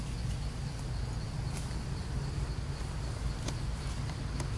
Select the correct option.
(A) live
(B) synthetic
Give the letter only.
A